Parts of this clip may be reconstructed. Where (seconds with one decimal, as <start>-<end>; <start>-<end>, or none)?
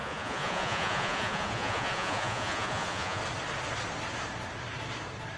0.0-3.2